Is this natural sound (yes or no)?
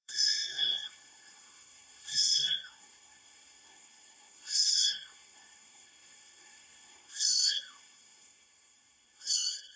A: no